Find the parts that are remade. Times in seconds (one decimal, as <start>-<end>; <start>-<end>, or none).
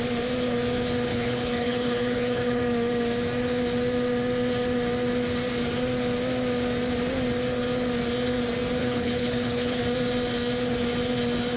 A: 1.1-2.6; 8.8-9.8